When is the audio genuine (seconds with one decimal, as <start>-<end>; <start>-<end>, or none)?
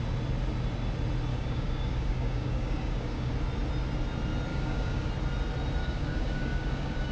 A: 0.0-1.3; 3.3-4.5; 5.1-5.8